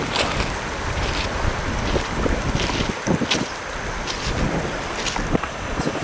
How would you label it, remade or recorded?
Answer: recorded